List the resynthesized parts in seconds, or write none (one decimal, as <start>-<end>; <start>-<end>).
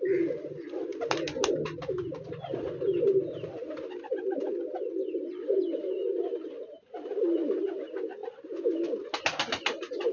none